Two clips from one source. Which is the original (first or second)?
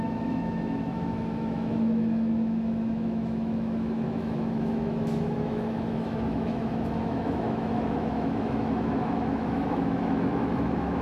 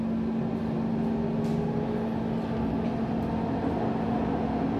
second